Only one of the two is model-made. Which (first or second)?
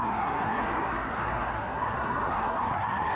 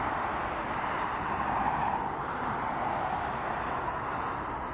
first